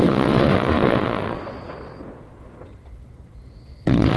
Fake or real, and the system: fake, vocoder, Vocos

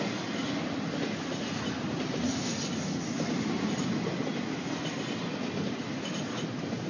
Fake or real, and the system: real